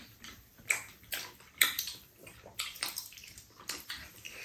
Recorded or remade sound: remade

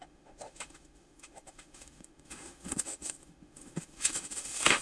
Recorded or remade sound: remade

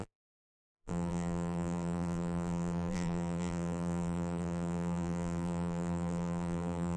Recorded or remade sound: remade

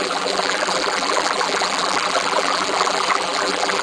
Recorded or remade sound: remade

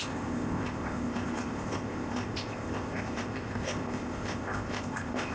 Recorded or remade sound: remade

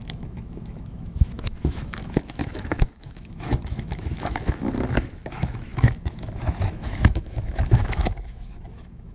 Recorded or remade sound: remade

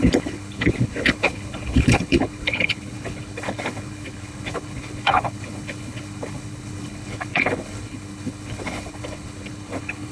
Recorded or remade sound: remade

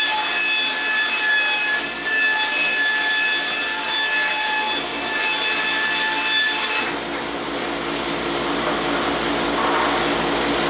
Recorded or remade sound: recorded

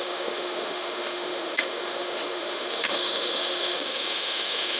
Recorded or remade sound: remade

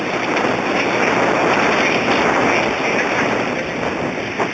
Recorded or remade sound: recorded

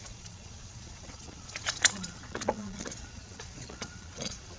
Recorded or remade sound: remade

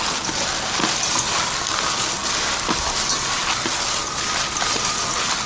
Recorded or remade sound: recorded